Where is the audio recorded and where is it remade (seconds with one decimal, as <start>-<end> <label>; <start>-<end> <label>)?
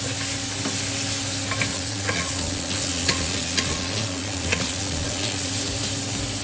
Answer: 0.0-1.7 recorded; 1.7-5.5 remade; 5.5-6.4 recorded